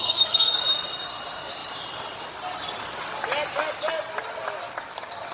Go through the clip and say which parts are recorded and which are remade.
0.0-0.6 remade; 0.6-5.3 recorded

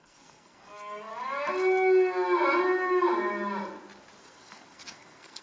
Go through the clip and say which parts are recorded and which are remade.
0.0-1.1 remade; 1.1-4.2 recorded; 4.2-5.4 remade

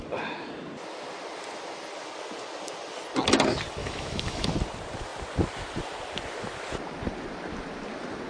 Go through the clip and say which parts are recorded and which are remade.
0.0-3.8 recorded; 3.8-4.5 remade; 4.5-8.3 recorded

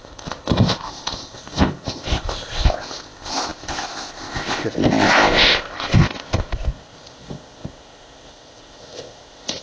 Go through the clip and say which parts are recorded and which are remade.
0.0-9.6 remade

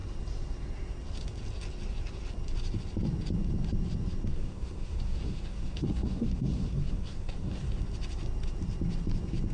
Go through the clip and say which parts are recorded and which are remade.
0.0-4.3 recorded; 4.3-7.8 remade; 7.8-9.5 recorded

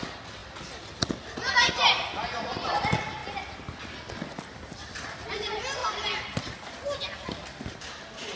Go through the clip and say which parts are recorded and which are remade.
0.0-8.4 recorded

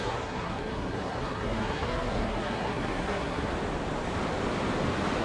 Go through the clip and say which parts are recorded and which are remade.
0.0-3.5 remade; 3.5-5.2 recorded

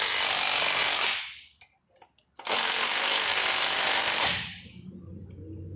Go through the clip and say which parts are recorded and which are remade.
0.0-0.8 recorded; 0.8-1.8 remade; 1.8-3.3 recorded; 3.3-4.7 remade; 4.7-5.8 recorded